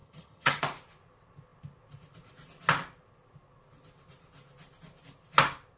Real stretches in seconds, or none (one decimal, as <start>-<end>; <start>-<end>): 0.6-5.8